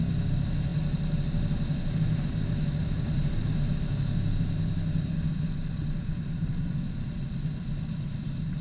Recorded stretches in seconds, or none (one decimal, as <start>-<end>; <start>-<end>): 0.0-8.6